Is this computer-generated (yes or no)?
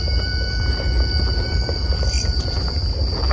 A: no